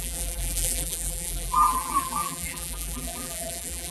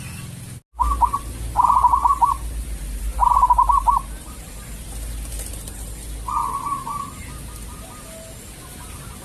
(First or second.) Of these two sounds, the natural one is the second